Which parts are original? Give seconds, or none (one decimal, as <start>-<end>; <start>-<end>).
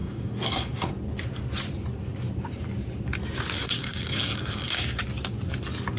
0.9-3.6; 5.0-6.0